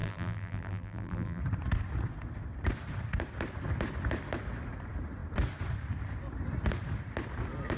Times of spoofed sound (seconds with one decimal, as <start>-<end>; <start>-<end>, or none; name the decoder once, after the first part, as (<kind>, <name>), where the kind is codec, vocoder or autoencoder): 0.0-1.4 (vocoder, BigVGAN v2)